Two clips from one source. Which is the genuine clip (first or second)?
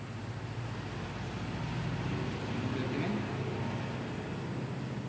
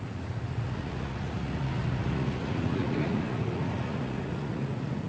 first